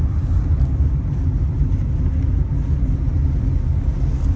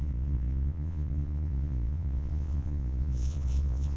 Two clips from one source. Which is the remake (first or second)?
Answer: second